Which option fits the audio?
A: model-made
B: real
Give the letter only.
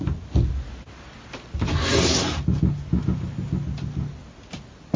B